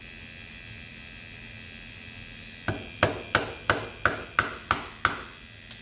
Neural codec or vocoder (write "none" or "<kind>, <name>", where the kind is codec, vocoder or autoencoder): none